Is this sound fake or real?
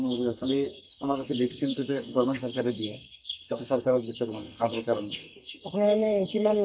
fake